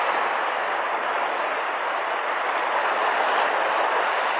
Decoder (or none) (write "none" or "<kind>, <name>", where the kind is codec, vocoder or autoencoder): none